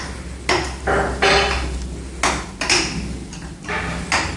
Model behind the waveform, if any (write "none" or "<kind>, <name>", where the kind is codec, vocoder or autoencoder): none